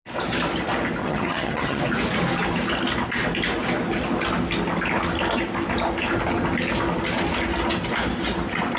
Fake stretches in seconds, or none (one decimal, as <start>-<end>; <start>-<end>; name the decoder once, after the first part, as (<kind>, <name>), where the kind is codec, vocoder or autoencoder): 1.0-1.8 (vocoder, HiFi-GAN)

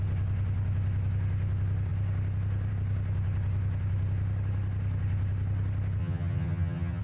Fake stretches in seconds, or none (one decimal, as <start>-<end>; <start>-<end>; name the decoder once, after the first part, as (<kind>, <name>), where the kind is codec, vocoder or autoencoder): 6.0-7.0 (vocoder, HiFi-GAN)

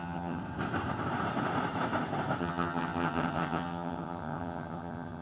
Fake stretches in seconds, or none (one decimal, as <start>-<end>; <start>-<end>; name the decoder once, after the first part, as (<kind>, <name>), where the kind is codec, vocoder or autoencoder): 0.0-0.4 (vocoder, HiFi-GAN); 2.4-5.2

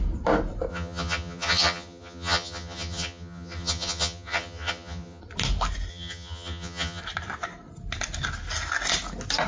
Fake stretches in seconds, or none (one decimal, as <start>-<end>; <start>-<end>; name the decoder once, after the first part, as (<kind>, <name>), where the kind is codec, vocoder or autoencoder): 0.7-5.2 (vocoder, HiFi-GAN); 5.9-7.0

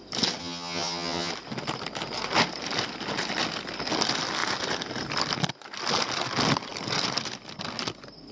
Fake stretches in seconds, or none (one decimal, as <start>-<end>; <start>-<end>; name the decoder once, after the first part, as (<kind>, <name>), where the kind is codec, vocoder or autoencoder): 0.4-1.3 (vocoder, HiFi-GAN)